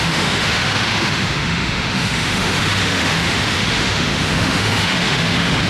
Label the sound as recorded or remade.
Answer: remade